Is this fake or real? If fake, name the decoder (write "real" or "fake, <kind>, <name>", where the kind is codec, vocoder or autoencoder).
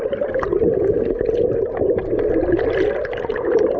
real